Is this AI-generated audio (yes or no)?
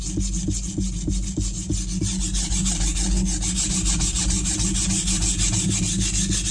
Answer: no